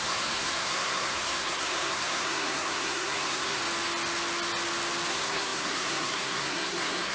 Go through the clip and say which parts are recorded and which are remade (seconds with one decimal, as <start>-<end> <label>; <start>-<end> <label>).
0.0-3.6 remade; 3.6-5.1 recorded; 5.1-7.1 remade